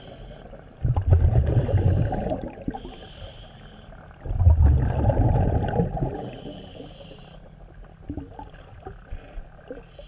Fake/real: real